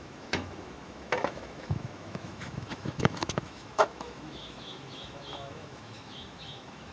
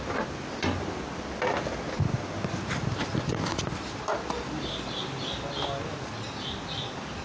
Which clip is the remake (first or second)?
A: first